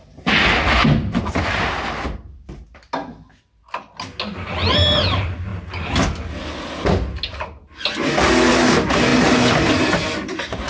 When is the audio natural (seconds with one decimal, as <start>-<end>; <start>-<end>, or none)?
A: 0.0-10.7